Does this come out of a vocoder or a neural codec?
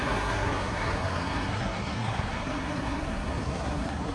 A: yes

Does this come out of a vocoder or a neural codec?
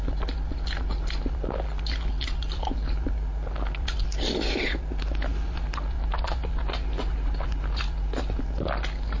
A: no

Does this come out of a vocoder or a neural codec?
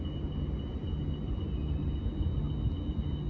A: no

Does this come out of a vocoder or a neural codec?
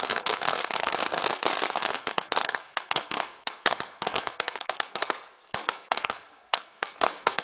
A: yes